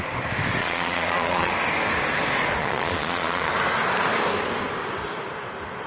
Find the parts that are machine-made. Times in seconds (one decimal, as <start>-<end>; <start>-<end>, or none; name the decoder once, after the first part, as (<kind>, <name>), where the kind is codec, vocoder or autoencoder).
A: 0.6-1.5 (vocoder, Vocos); 2.6-3.5